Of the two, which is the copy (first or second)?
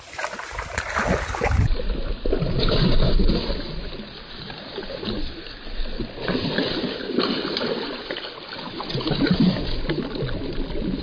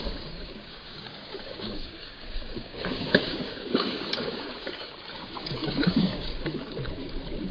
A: second